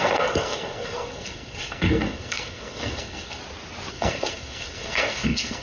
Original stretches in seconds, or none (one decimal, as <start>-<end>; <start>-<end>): 3.4-3.9